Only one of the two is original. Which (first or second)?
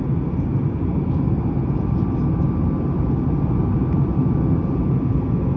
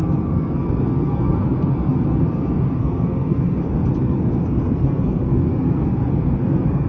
first